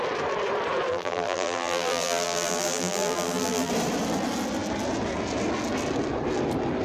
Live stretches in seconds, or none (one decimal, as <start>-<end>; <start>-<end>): 0.0-0.9; 3.7-6.8